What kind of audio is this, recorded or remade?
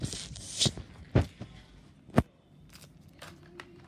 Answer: recorded